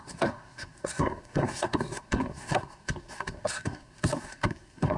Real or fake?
fake